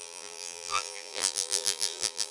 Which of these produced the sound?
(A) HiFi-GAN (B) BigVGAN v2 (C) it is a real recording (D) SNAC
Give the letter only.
B